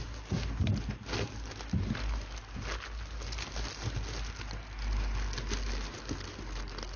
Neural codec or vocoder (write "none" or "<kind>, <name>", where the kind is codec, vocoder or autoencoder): none